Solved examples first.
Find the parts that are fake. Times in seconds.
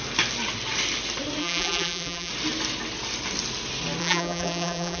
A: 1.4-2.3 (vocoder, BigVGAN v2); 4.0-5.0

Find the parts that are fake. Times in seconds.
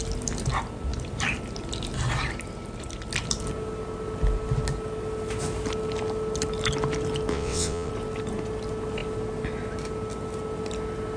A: 7.3-7.9 (vocoder, WaveNeXt)